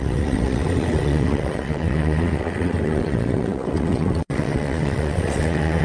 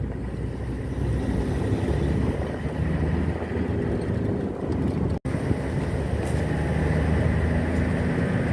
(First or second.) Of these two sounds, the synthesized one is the first